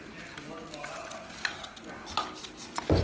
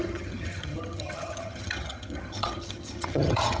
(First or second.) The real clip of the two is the first